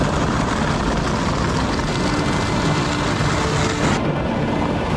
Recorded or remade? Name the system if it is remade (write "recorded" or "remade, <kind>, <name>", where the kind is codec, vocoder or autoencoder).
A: recorded